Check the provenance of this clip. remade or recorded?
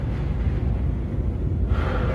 recorded